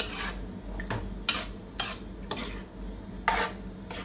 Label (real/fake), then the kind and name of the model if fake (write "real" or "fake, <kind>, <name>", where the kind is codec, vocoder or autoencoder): real